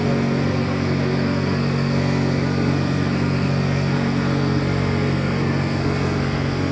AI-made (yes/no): yes